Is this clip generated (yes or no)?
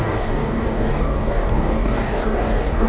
yes